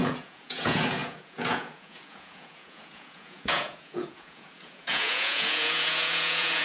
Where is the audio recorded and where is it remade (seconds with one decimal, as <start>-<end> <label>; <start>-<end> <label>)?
0.0-6.6 remade